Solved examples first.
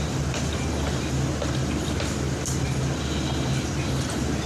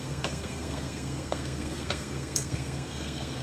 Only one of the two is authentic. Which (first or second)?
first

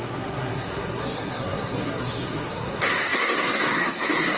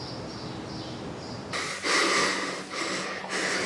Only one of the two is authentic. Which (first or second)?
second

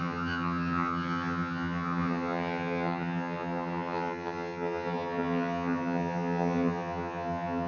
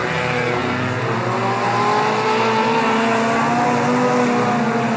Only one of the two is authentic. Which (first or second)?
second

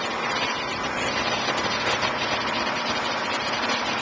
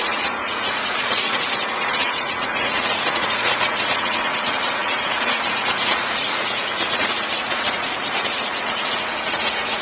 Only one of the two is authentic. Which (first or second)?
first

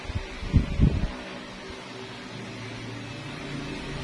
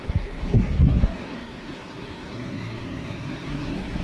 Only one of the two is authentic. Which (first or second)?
first